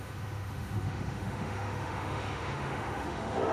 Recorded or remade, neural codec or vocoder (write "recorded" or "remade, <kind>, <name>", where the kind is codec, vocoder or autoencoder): remade, autoencoder, DAC-VAE